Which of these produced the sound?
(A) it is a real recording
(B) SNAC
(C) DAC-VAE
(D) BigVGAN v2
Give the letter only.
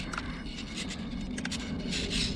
A